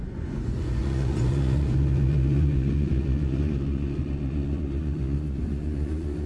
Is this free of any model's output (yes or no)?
no